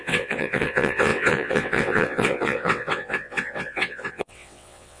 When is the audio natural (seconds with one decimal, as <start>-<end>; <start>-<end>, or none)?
none